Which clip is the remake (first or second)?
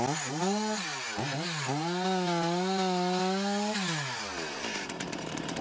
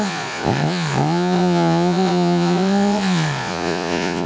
second